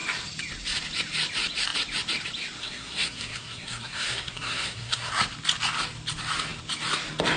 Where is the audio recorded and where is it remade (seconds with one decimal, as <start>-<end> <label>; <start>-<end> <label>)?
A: 0.0-2.6 recorded; 2.6-5.1 remade; 5.1-7.4 recorded